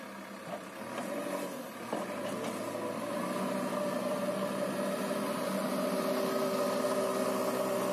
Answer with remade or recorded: recorded